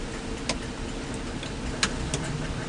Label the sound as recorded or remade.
recorded